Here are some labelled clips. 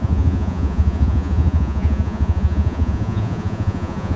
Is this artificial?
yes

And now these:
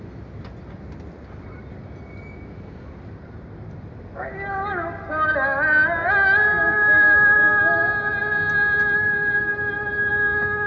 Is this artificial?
no